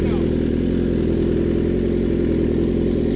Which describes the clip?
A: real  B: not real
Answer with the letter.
A